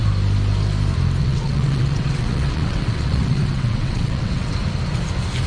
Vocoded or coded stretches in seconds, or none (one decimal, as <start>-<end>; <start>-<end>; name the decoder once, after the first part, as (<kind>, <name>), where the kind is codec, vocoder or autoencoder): 1.2-4.5 (vocoder, WaveNeXt)